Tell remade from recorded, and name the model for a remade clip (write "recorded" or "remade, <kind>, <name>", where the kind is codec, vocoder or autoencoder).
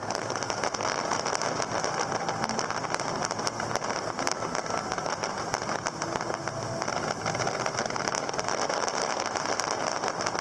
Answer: recorded